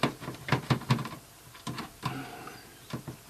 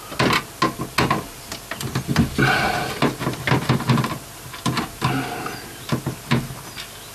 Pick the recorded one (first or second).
second